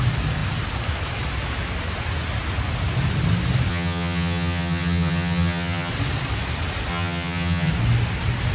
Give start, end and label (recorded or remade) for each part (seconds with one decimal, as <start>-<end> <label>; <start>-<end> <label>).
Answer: 0.0-3.7 recorded; 3.7-5.9 remade; 5.9-6.9 recorded; 6.9-7.7 remade; 7.7-8.5 recorded